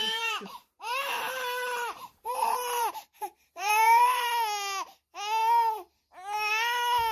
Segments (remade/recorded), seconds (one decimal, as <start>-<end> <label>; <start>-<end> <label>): 0.0-4.3 remade; 4.3-7.1 recorded